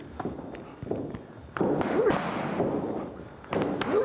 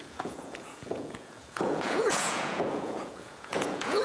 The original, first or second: first